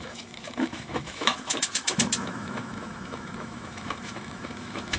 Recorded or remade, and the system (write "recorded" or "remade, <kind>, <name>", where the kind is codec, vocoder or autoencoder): remade, autoencoder, DAC-VAE